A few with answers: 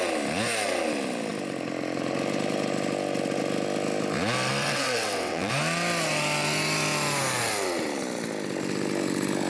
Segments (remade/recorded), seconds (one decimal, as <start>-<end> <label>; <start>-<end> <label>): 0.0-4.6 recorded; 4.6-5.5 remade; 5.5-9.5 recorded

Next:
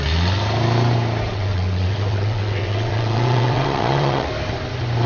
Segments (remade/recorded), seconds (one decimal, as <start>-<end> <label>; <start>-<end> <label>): 0.0-1.3 recorded; 1.3-4.3 remade; 4.3-5.1 recorded

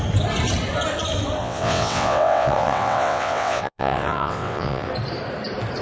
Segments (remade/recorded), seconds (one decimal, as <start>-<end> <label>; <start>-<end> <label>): 0.0-1.4 recorded; 1.4-4.9 remade; 4.9-5.8 recorded